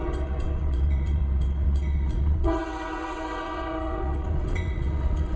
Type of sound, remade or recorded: remade